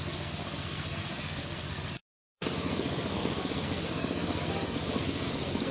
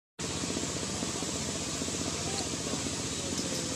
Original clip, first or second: second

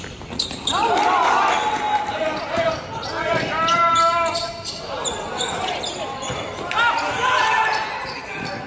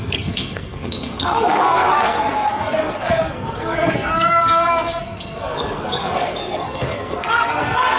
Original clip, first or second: first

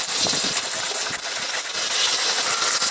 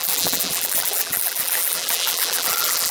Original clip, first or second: first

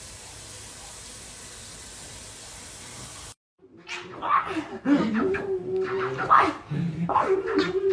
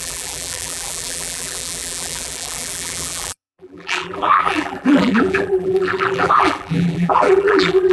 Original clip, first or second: first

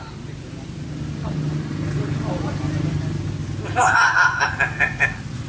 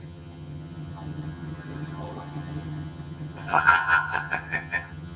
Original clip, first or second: first